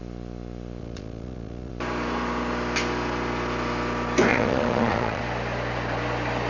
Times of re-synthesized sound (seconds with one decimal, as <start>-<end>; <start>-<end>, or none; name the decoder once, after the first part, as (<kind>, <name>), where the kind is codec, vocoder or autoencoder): 0.8-1.7 (vocoder, Vocos); 4.3-5.2